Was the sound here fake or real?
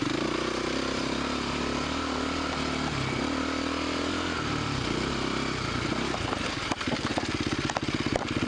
real